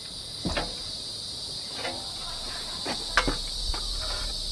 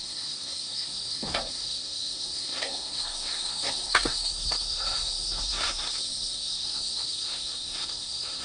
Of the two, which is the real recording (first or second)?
first